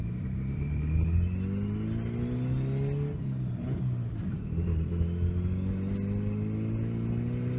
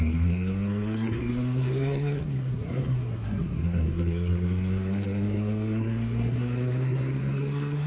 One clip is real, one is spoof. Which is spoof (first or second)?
second